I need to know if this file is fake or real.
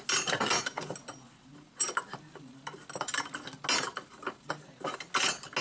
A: real